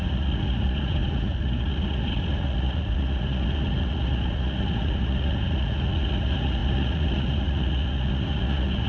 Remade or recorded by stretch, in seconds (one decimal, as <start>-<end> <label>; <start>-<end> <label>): 0.0-8.9 remade